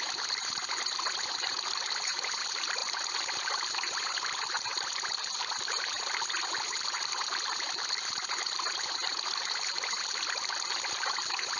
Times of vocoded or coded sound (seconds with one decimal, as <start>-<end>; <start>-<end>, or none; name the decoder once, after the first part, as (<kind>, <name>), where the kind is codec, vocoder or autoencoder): 0.0-11.6 (vocoder, BigVGAN v2)